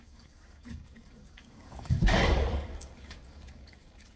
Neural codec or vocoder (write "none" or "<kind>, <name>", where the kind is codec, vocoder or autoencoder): codec, DAC